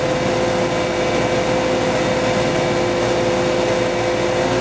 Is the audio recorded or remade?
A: recorded